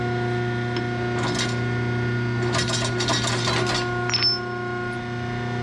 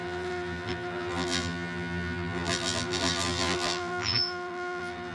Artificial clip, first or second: second